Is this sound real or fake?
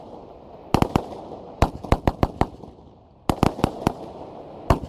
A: real